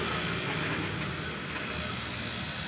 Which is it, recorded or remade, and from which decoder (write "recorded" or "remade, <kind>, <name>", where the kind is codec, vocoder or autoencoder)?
recorded